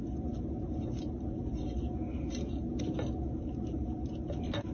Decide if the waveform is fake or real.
real